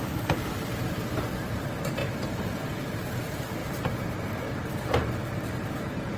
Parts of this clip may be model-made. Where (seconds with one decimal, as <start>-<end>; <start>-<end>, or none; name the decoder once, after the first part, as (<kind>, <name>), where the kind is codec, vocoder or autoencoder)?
0.0-3.6 (vocoder, BigVGAN v2); 4.4-6.2